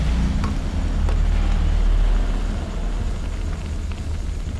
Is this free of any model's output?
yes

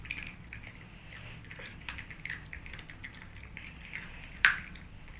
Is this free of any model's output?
no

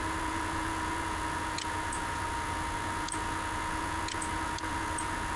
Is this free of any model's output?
no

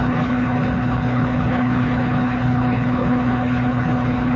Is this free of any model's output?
no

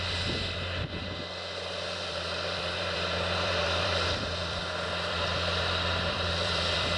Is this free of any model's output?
no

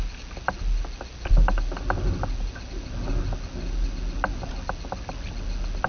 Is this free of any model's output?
yes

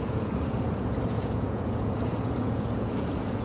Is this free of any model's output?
no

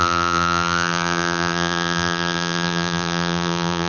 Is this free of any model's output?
no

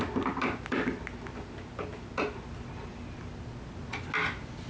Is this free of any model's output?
yes